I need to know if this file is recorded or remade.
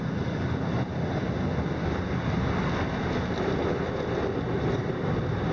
recorded